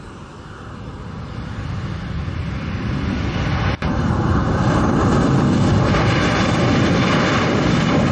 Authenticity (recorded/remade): recorded